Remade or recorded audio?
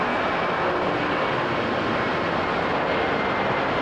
recorded